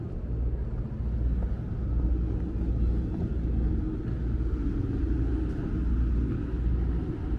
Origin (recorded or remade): recorded